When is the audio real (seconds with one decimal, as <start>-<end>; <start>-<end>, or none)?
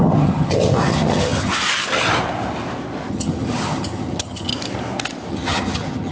1.5-3.1; 4.5-5.3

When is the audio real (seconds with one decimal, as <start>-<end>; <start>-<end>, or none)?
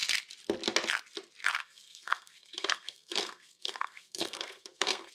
0.0-1.6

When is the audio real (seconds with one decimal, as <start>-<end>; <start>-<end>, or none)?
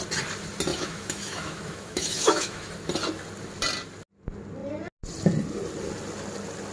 0.0-0.7; 2.7-6.7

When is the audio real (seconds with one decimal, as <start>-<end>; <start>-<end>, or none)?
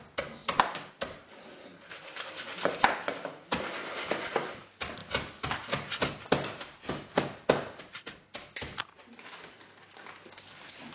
0.0-10.9